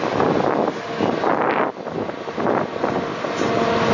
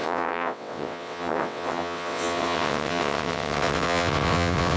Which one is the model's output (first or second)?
second